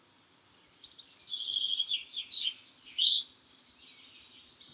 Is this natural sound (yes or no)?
yes